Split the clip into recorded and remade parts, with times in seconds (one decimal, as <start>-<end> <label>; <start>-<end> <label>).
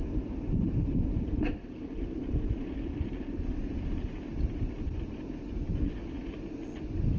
0.0-4.3 remade; 4.3-7.2 recorded